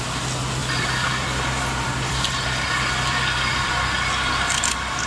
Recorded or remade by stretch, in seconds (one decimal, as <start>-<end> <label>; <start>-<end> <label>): 0.0-0.6 recorded; 0.6-3.7 remade; 3.7-5.1 recorded

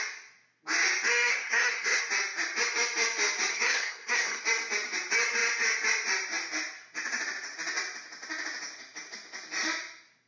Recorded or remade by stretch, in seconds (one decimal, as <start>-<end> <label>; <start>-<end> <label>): 0.0-1.3 recorded; 1.3-2.0 remade; 2.0-3.5 recorded; 3.5-4.4 remade; 4.4-10.3 recorded

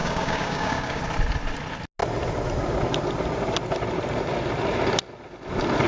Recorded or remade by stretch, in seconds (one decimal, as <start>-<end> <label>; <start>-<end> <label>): 0.0-1.0 remade; 1.0-5.9 recorded

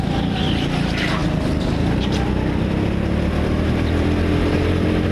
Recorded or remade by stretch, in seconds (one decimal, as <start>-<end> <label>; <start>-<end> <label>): 0.0-5.1 recorded